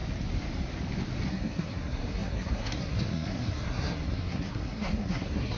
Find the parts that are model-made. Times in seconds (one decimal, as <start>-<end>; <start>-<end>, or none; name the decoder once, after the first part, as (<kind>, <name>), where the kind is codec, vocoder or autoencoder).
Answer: 1.3-5.6 (codec, SNAC)